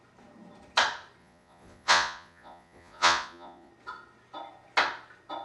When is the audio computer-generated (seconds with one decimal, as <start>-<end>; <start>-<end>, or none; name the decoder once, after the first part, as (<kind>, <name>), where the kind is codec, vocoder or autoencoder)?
1.2-3.7 (vocoder, Vocos)